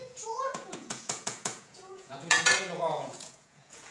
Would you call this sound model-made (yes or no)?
yes